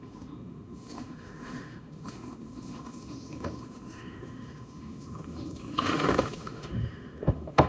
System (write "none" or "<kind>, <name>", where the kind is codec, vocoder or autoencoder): autoencoder, DAC-VAE